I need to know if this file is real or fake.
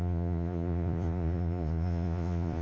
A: fake